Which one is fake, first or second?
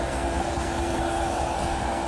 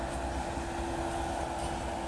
first